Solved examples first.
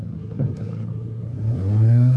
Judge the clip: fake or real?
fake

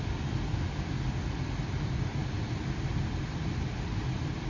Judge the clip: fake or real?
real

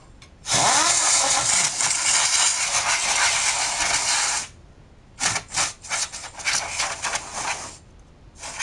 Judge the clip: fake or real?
real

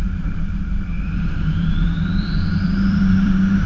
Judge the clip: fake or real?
fake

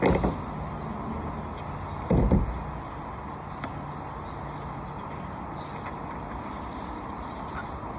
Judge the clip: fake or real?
real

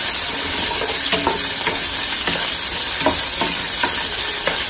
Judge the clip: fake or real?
real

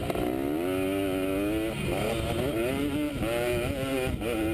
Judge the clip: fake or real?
real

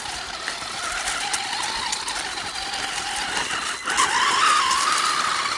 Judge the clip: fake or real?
real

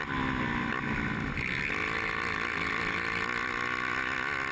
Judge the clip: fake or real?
real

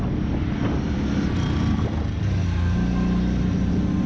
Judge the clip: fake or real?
real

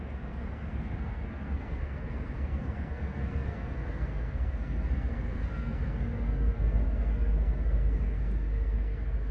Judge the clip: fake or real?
fake